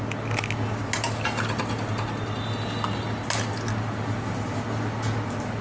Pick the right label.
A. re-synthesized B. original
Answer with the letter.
B